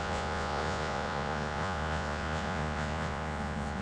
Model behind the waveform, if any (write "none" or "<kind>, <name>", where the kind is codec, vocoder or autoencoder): vocoder, Vocos